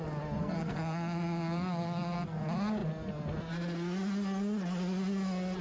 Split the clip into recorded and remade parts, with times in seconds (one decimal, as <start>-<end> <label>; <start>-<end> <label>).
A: 0.0-0.4 recorded; 0.4-2.4 remade; 2.4-5.6 recorded